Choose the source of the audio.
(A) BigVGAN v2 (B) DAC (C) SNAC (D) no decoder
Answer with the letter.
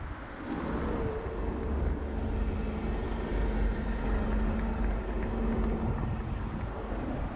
D